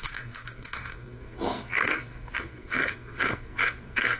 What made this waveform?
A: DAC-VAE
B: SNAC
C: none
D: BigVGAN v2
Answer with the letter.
B